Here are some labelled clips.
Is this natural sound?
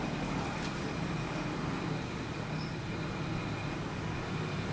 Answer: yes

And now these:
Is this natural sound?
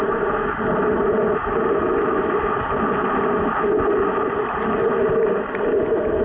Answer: yes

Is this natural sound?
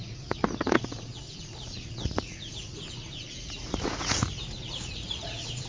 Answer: no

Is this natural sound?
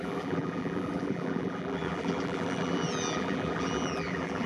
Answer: no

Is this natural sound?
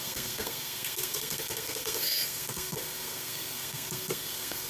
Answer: no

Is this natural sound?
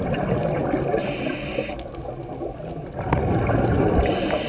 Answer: yes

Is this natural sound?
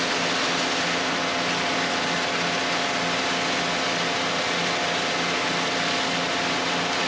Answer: yes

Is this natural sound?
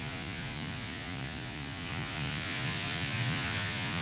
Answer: no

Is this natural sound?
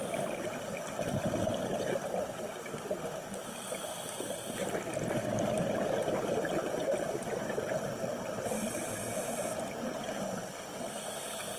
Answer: no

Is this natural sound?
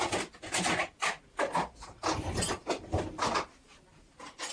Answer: yes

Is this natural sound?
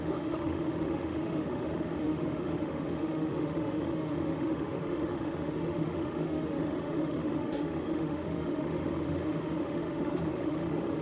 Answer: no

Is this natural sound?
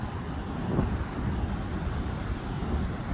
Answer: yes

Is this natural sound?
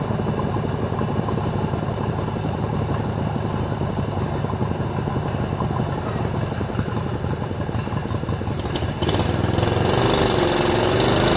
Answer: yes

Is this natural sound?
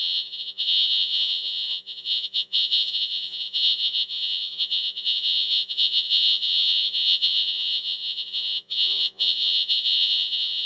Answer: no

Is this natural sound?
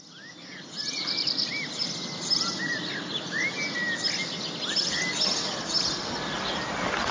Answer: yes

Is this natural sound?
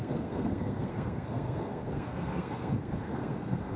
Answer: no